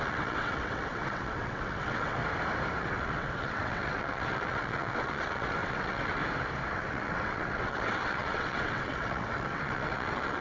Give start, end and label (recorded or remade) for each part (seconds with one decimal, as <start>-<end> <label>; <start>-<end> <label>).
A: 0.0-2.2 remade; 2.2-2.8 recorded; 2.8-6.2 remade; 6.2-6.7 recorded; 6.7-10.4 remade